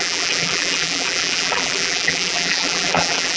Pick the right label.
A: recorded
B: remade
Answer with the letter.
B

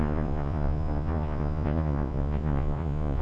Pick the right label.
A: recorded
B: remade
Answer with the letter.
B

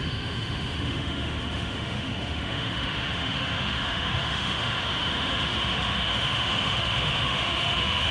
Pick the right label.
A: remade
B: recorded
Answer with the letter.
A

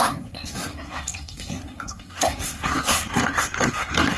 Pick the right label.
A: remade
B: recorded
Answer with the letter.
A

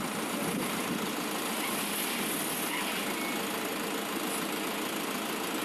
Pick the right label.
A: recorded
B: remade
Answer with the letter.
A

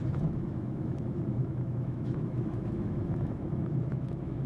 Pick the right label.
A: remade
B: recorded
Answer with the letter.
A